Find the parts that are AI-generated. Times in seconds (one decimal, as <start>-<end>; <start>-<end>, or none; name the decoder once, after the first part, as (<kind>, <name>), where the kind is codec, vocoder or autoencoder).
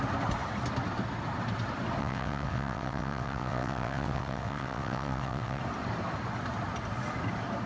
2.0-5.6 (vocoder, WaveNeXt)